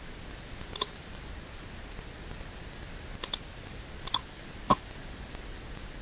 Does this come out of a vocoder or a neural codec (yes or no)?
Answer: no